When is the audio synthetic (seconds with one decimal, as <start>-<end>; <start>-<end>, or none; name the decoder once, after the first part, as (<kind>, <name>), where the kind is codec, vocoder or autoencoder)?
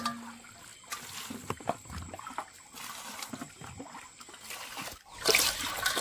none